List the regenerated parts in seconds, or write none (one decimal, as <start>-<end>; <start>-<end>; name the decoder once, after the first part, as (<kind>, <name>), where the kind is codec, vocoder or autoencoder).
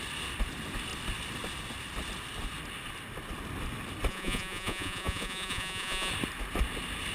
4.1-6.1 (vocoder, Vocos)